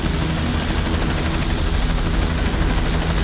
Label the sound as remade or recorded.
recorded